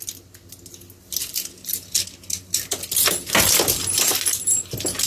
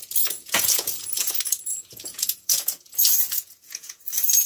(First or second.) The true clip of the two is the first